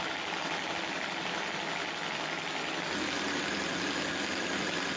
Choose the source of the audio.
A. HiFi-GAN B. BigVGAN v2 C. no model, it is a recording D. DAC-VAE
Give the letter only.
C